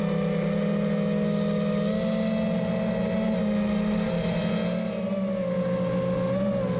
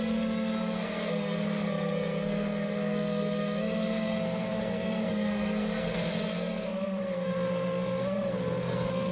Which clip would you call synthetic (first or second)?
second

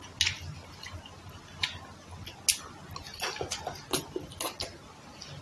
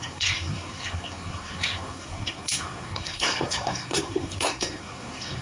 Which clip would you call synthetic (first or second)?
second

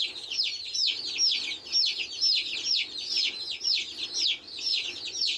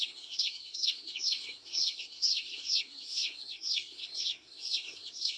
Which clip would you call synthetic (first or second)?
second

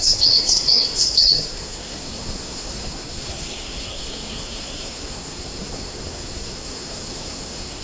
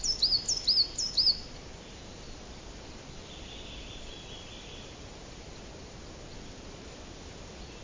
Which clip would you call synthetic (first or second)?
first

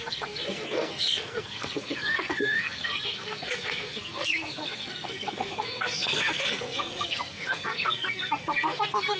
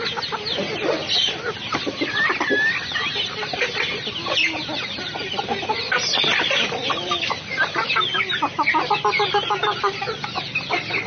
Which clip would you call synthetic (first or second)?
first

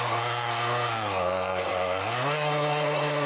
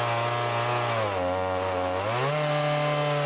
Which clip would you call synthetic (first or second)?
first